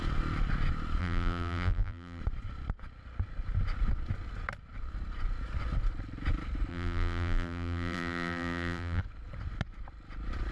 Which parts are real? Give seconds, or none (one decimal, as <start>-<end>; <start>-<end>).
0.0-1.0; 2.2-6.7; 9.0-10.5